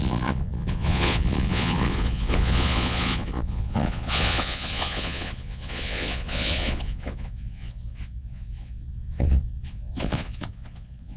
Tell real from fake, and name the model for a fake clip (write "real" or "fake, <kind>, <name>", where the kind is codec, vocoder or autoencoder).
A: fake, vocoder, Vocos